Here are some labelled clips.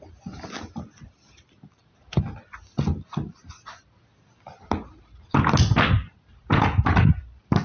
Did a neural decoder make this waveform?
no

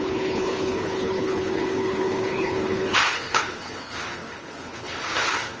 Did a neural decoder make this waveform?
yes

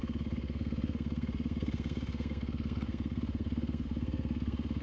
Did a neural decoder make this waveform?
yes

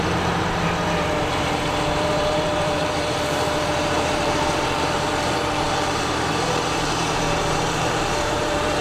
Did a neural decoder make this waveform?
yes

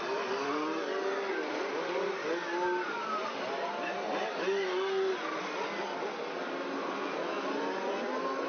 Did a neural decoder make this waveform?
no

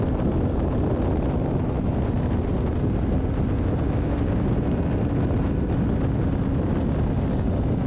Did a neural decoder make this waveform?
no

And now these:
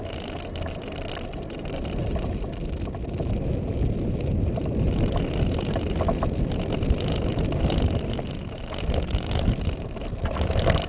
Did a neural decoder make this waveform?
no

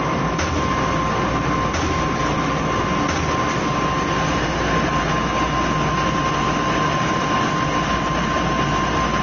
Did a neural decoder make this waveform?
no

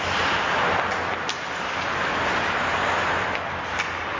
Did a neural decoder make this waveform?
no